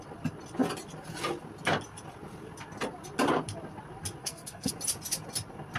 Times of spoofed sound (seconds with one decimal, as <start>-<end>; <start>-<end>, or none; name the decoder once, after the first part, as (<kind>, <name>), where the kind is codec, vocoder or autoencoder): 4.2-4.7 (codec, SNAC)